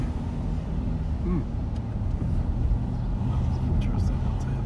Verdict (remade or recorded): recorded